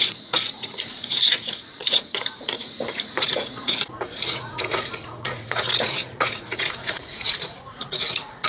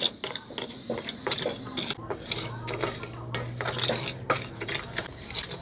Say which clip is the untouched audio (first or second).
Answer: second